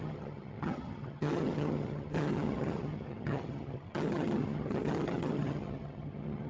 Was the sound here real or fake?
fake